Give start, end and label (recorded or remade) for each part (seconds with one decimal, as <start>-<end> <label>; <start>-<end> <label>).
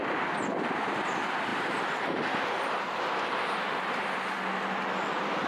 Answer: 0.0-5.5 recorded